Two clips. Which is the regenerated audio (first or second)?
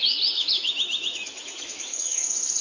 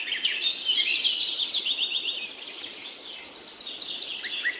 first